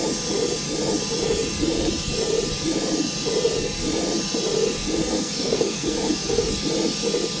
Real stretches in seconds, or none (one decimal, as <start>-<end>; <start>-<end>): 0.0-5.0; 6.5-7.4